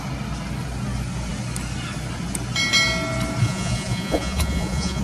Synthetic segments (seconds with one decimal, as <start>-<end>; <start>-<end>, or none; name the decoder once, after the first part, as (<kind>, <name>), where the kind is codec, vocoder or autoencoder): 3.4-5.0 (vocoder, Vocos)